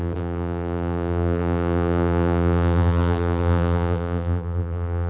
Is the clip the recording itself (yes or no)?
no